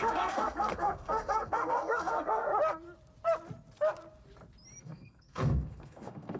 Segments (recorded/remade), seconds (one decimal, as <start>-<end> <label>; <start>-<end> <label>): 0.0-2.5 remade; 2.5-4.8 recorded; 4.8-6.4 remade